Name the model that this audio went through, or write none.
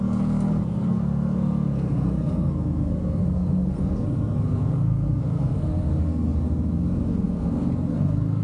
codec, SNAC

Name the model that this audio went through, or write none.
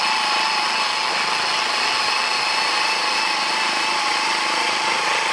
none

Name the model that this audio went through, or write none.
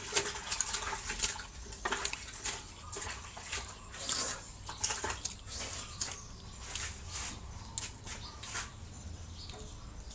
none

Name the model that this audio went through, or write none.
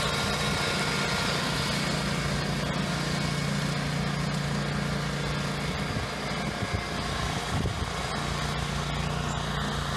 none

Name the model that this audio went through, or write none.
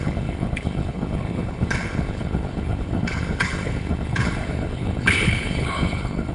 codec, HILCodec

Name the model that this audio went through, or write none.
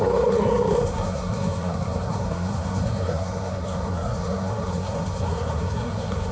codec, SNAC